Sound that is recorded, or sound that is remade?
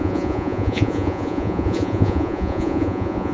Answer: remade